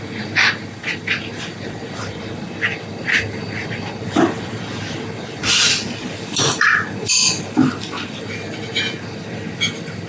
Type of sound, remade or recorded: recorded